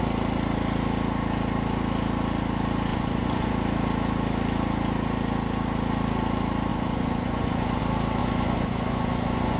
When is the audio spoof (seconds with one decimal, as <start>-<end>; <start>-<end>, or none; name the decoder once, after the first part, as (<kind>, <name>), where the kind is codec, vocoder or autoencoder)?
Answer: 2.9-3.5 (vocoder, Vocos); 6.7-7.8; 8.2-9.6